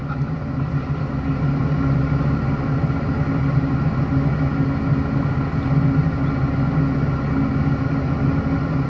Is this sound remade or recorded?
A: recorded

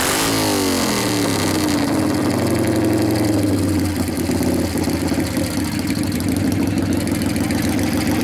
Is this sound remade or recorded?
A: recorded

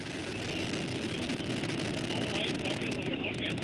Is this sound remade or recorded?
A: recorded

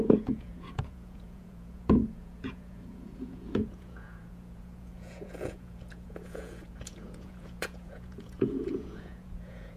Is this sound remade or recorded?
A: remade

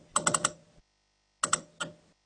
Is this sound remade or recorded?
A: recorded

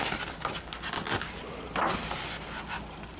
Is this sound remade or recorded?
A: recorded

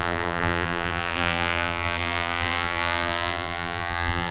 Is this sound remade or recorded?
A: remade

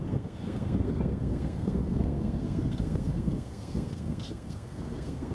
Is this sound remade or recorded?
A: remade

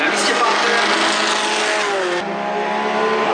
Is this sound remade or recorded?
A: recorded